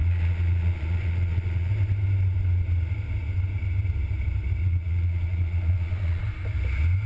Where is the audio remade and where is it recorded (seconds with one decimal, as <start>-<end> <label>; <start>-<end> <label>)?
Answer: 0.0-1.7 remade; 1.7-4.6 recorded; 4.6-6.2 remade; 6.2-7.1 recorded